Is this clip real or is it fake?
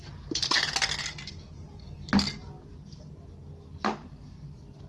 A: real